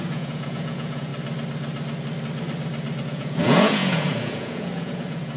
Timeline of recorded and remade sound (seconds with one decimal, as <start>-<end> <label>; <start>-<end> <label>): 0.0-1.1 remade; 1.1-3.0 recorded; 3.0-5.4 remade